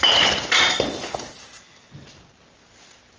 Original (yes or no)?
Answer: yes